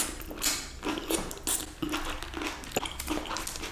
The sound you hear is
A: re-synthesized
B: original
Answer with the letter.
B